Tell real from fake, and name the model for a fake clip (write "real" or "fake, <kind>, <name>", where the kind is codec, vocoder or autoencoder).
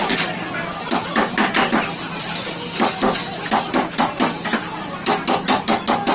real